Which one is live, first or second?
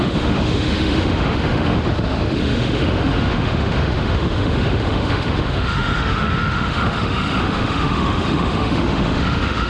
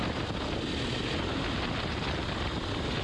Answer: second